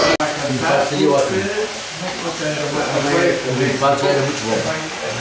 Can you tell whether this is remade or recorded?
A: recorded